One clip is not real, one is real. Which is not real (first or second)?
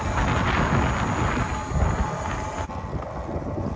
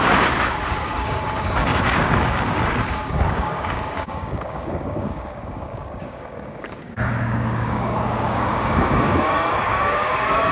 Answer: second